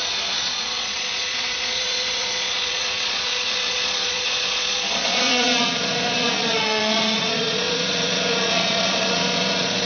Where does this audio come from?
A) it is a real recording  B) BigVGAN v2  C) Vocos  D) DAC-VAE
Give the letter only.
C